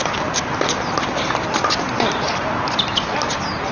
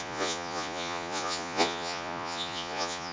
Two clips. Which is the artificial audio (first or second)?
second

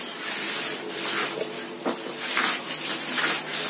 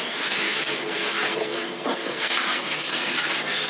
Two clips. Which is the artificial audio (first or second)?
second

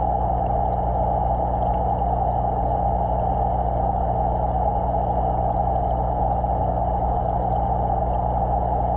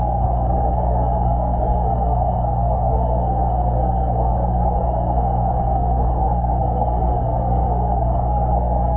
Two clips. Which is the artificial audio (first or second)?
second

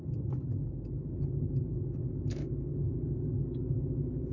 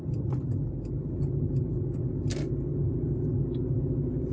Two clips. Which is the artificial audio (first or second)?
first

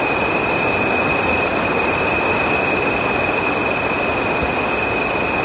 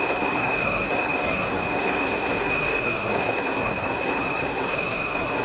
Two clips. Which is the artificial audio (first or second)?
second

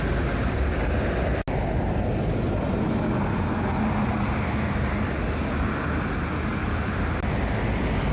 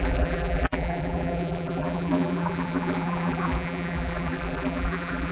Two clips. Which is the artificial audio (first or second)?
second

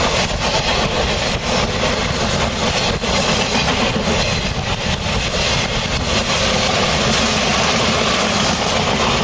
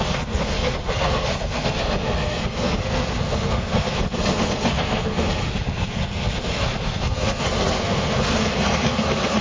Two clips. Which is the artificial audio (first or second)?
second